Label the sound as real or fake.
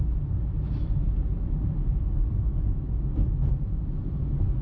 real